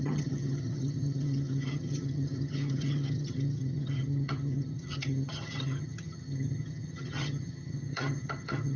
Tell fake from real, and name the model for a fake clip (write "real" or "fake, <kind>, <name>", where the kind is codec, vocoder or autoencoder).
fake, vocoder, HiFi-GAN